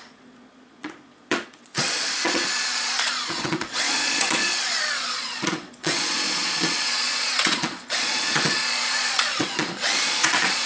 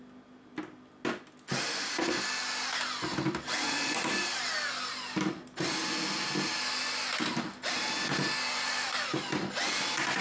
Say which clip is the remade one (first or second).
first